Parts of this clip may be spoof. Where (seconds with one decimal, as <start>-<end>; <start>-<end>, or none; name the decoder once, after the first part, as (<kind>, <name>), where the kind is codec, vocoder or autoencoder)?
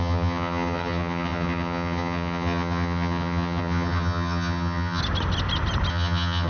0.0-5.0 (vocoder, HiFi-GAN); 5.9-6.5